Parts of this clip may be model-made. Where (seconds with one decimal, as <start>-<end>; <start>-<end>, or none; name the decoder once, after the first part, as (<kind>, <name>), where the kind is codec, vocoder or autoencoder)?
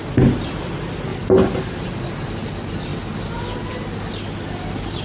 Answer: none